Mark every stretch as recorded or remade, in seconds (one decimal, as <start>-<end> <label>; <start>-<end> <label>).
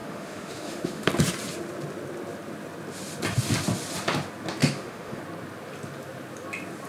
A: 0.0-1.1 remade; 1.1-4.6 recorded; 4.6-5.2 remade; 5.2-6.9 recorded